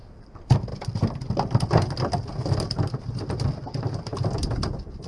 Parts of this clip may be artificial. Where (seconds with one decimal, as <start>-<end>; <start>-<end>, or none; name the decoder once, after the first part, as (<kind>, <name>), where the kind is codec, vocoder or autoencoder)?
none